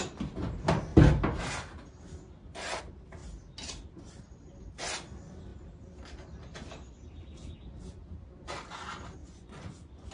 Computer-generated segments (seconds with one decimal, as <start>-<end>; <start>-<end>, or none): 9.2-10.1